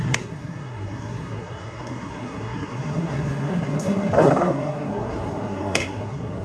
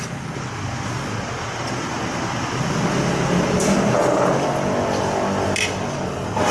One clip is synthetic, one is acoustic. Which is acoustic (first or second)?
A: second